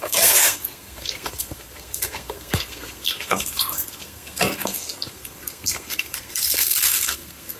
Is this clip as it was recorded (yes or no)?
no